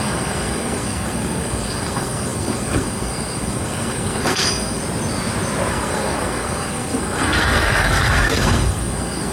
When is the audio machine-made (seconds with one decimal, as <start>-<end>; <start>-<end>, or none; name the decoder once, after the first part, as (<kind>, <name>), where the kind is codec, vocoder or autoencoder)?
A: 0.0-4.8 (codec, SNAC); 5.7-9.3

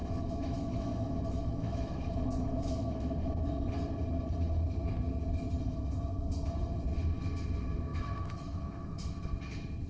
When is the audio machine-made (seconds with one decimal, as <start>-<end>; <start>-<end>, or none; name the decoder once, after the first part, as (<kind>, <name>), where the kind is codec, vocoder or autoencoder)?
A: 0.0-3.5 (autoencoder, DAC-VAE); 7.9-9.2

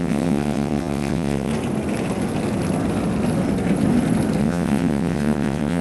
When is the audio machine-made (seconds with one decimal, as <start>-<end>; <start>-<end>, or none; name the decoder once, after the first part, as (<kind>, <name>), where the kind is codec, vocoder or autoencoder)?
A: 0.0-1.5 (vocoder, WaveNeXt); 4.4-5.8

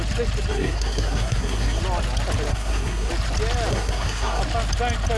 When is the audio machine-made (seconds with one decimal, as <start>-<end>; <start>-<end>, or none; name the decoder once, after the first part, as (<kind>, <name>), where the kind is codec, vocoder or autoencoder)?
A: 0.5-1.8 (codec, SNAC); 2.5-3.1; 3.7-4.4